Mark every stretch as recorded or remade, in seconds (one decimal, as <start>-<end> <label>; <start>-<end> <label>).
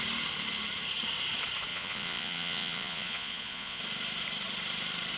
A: 0.0-1.7 recorded; 1.7-3.8 remade; 3.8-5.2 recorded